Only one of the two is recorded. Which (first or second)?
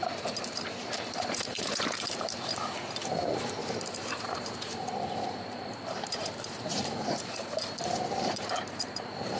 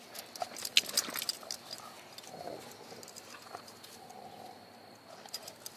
second